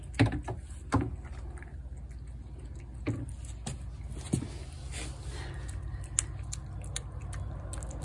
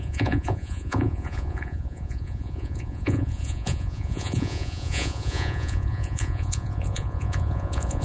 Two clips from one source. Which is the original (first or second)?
first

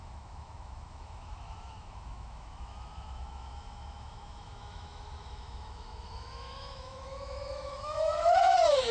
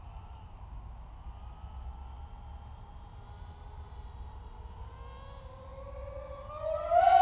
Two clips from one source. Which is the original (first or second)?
second